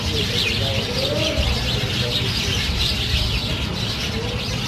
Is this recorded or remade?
recorded